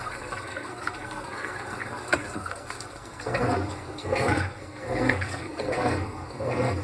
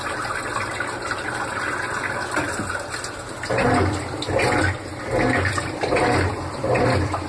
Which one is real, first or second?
second